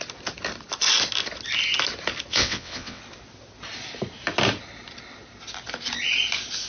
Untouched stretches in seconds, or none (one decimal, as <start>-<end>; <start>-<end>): 0.0-2.3; 3.0-6.7